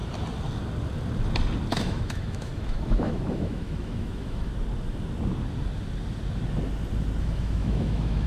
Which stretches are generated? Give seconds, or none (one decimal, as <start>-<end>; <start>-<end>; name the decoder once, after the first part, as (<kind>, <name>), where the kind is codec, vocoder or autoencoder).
1.7-4.5 (autoencoder, DAC-VAE); 7.2-8.3

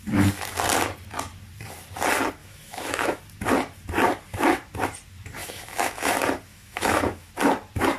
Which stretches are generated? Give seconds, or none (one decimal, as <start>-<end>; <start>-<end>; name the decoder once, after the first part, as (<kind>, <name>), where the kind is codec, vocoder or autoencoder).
2.4-3.2 (autoencoder, DAC-VAE); 5.4-6.1; 6.5-7.3

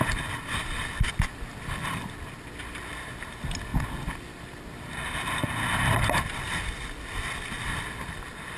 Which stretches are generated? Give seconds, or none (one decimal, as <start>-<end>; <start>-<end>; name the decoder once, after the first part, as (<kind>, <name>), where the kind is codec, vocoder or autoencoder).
none

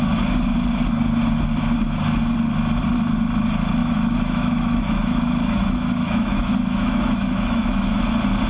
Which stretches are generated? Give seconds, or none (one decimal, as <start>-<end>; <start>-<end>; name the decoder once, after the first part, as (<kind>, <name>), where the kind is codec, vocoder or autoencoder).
3.8-8.0 (autoencoder, DAC-VAE)

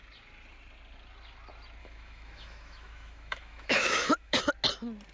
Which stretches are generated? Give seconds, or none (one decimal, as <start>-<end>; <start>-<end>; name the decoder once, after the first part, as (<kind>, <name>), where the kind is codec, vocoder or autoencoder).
1.8-4.4 (autoencoder, DAC-VAE)